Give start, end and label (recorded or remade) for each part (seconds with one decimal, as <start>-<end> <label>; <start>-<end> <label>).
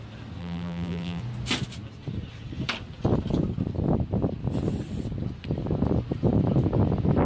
0.0-0.4 recorded; 0.4-1.2 remade; 1.2-7.2 recorded